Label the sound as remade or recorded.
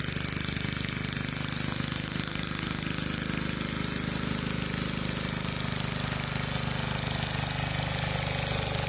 recorded